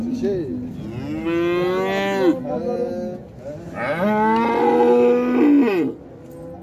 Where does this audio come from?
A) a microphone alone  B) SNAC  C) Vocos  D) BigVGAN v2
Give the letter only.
A